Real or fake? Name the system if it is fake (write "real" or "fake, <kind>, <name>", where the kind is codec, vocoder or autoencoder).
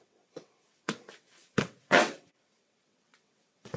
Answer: fake, vocoder, WaveNeXt